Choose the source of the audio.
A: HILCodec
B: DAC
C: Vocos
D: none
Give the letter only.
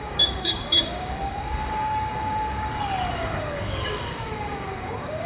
B